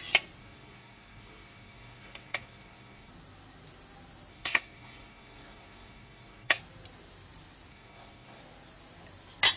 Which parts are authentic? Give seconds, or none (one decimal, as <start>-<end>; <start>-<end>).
0.0-0.4; 3.1-4.3; 6.6-7.7; 8.4-9.6